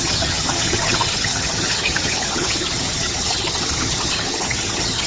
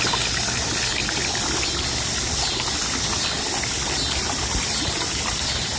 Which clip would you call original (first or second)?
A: second